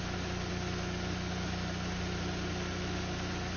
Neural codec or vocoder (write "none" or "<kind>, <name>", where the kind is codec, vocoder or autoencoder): none